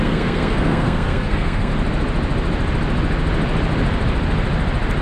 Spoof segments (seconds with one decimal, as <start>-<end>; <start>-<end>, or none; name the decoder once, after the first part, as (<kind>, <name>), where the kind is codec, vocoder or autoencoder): 0.0-1.7 (codec, SNAC)